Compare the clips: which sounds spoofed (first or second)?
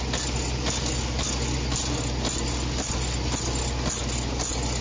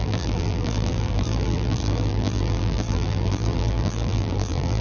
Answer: second